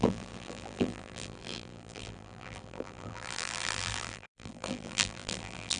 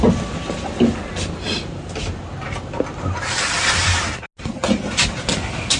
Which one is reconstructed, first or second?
first